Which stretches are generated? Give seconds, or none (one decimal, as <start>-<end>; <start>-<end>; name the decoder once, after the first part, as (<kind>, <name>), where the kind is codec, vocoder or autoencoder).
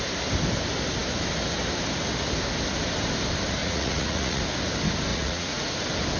3.6-4.4 (vocoder, Vocos); 5.1-5.7